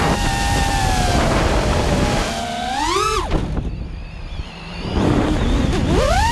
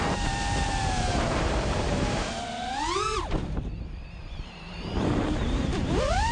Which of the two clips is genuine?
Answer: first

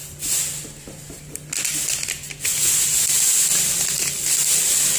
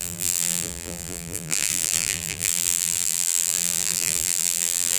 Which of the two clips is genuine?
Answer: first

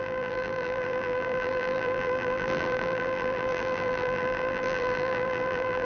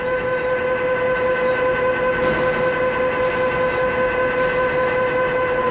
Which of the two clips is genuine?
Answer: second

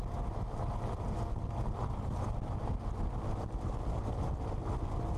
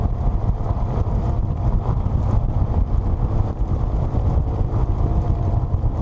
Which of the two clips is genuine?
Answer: first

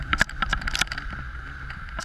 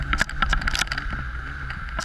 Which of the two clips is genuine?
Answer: second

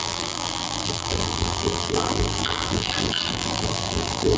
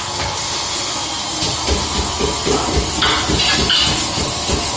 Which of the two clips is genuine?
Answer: second